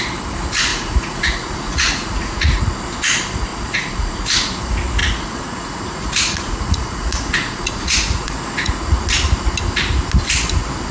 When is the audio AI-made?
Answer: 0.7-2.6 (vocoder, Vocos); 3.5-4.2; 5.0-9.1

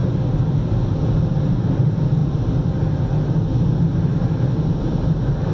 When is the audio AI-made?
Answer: none

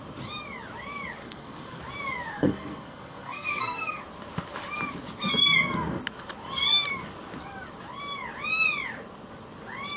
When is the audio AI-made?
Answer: 1.2-1.8 (codec, SNAC); 2.3-4.0